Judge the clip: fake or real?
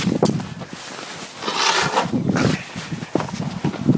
real